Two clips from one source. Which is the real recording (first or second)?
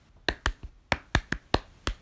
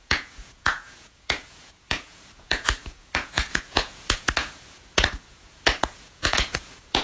first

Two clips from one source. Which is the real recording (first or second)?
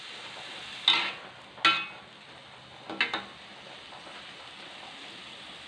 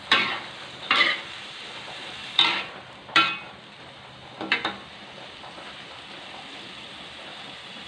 first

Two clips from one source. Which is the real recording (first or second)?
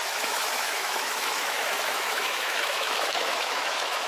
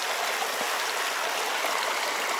second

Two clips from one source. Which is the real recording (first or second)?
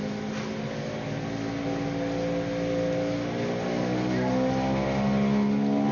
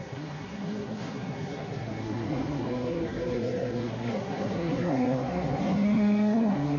first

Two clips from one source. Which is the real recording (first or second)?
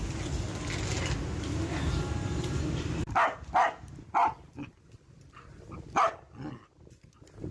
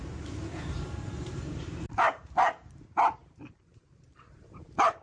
first